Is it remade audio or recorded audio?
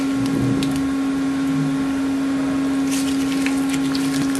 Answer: recorded